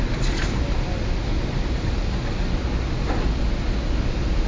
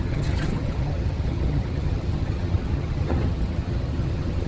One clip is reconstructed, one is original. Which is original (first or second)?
first